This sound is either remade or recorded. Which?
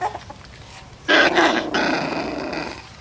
recorded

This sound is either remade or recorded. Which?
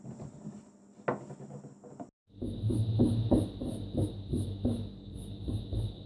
recorded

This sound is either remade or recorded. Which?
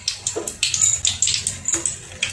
recorded